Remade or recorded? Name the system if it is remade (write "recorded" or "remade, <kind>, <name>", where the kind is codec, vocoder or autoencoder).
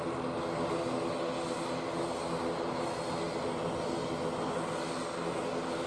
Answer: recorded